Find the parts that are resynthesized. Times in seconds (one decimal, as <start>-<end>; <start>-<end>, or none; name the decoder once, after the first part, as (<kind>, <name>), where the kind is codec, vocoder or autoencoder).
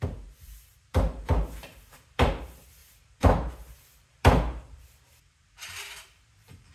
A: 0.0-6.7 (vocoder, BigVGAN v2)